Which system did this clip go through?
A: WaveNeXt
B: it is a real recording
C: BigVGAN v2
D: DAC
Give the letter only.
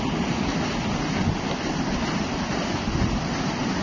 B